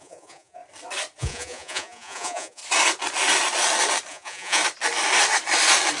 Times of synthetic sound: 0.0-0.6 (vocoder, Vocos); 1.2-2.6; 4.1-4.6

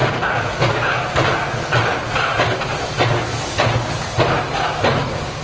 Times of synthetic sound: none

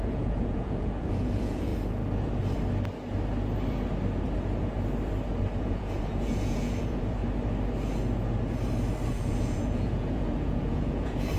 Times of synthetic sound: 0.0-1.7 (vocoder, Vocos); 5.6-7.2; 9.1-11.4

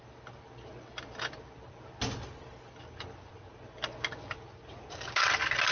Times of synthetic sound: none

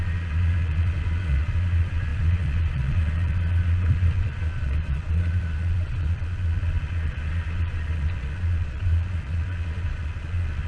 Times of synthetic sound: 0.0-10.7 (vocoder, Vocos)